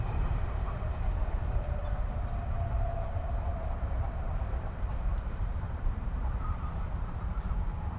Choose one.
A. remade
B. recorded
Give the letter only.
A